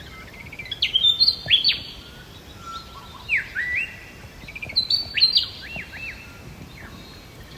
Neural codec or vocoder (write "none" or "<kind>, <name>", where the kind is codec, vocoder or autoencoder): none